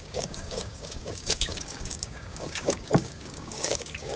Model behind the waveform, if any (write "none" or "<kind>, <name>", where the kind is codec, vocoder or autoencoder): codec, DAC